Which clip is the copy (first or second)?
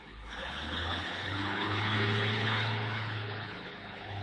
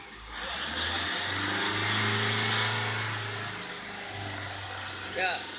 first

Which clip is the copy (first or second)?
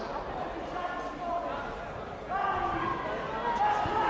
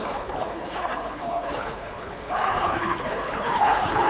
second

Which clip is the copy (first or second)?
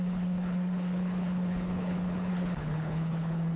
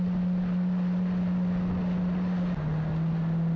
first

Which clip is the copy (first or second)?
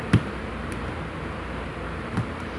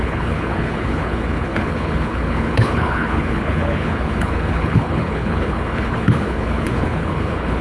second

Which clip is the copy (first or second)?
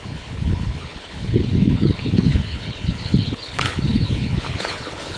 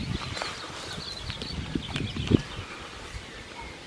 first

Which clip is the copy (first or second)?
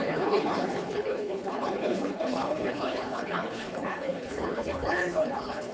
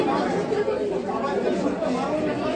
first